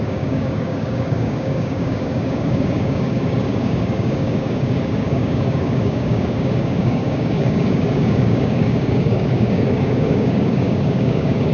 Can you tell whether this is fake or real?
fake